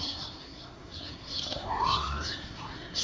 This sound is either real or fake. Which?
fake